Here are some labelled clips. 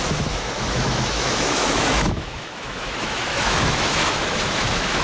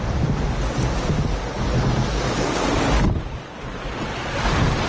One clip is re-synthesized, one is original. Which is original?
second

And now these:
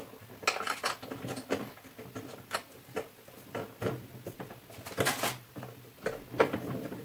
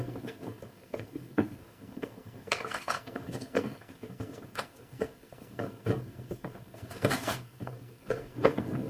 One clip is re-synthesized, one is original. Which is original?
first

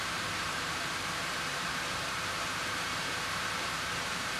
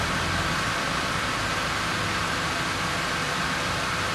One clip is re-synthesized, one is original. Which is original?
second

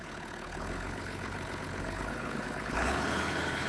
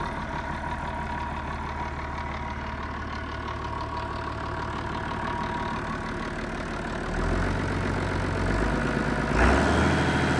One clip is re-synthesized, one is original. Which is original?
second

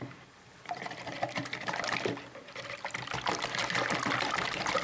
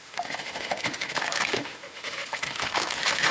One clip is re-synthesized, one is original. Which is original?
first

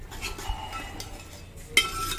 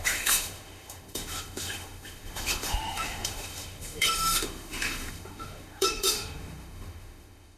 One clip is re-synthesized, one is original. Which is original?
first